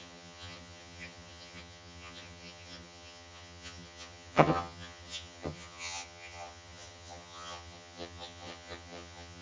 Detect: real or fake fake